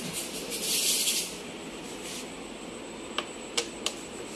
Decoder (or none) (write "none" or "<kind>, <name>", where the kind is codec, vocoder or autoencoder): none